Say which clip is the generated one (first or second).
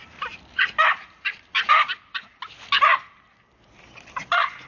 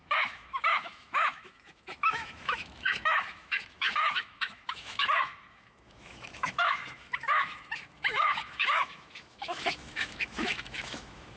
second